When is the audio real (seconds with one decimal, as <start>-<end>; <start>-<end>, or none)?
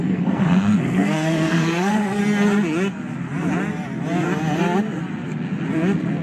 2.2-6.2